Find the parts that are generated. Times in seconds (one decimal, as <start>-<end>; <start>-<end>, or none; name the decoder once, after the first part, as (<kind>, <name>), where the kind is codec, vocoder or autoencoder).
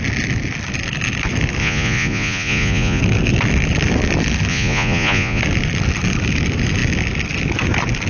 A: 1.6-3.0 (vocoder, Vocos); 4.5-5.4